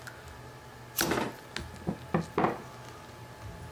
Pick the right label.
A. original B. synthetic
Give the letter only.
A